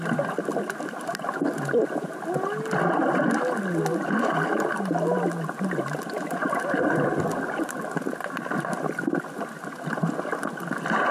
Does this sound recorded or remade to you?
recorded